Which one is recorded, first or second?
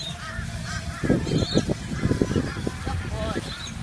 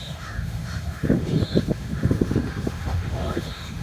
first